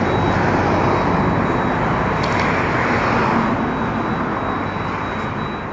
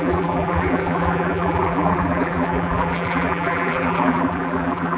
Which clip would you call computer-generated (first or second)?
second